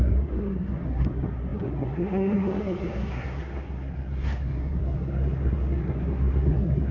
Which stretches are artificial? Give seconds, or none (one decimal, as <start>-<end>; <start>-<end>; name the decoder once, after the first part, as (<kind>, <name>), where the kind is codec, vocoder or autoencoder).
0.0-6.9 (codec, SNAC)